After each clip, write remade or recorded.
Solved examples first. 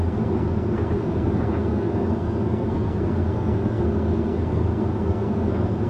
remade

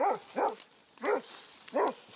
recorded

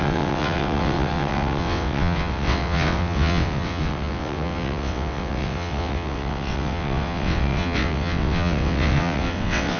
remade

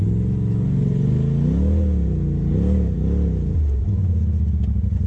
recorded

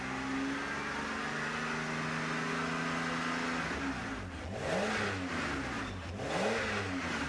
recorded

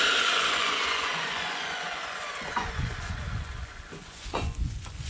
remade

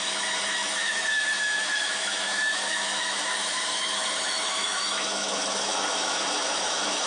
remade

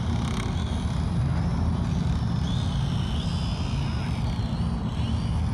recorded